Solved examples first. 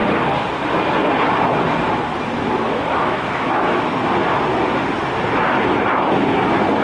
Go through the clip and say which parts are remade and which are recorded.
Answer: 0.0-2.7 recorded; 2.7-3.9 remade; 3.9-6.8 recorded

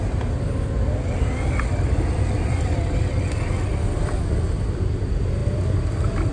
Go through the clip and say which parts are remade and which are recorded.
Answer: 0.0-6.3 recorded

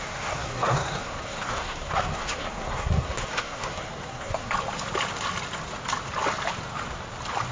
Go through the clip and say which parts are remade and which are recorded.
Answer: 0.0-4.5 remade; 4.5-7.5 recorded

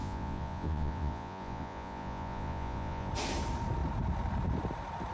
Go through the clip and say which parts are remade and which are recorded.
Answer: 0.0-3.1 remade; 3.1-5.1 recorded

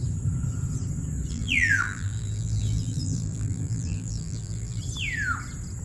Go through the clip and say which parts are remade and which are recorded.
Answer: 0.0-1.3 recorded; 1.3-4.8 remade; 4.8-5.8 recorded

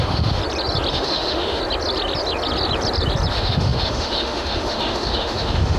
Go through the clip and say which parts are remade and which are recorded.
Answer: 0.0-0.4 remade; 0.4-0.9 recorded; 0.9-1.6 remade; 1.6-3.3 recorded; 3.3-5.8 remade

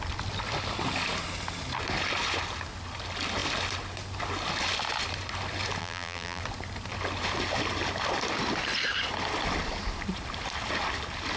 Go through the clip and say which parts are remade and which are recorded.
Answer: 0.0-5.8 recorded; 5.8-6.4 remade; 6.4-11.4 recorded